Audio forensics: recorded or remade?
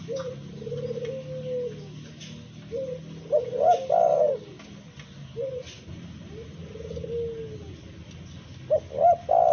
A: recorded